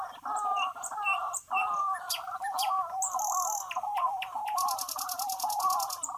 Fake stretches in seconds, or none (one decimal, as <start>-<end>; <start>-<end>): none